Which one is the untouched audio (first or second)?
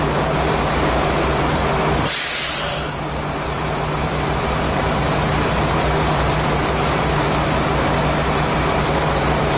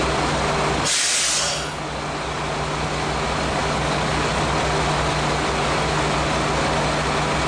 second